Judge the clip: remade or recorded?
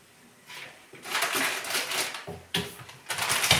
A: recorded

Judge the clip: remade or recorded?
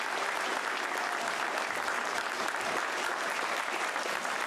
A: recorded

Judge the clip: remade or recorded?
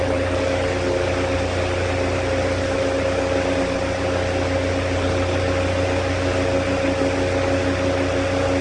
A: recorded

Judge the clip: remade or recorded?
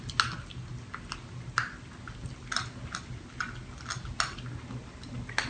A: recorded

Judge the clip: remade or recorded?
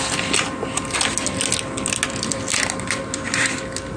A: recorded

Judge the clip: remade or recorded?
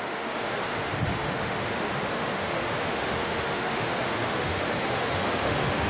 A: remade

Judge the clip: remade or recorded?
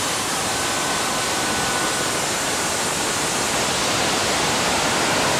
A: recorded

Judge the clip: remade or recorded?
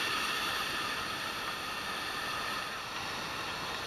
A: recorded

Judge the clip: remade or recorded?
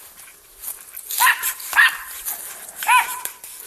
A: recorded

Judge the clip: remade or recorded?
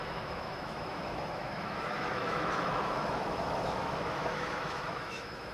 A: remade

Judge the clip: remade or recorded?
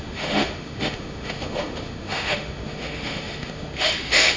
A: remade